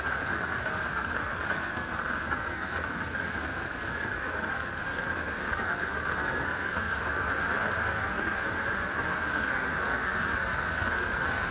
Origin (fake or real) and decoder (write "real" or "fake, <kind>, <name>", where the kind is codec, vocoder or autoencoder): fake, codec, SNAC